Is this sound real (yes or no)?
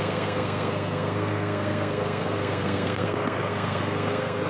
no